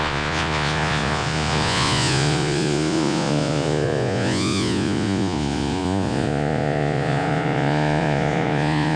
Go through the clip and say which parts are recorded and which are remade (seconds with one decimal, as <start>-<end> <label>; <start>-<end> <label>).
0.0-9.0 remade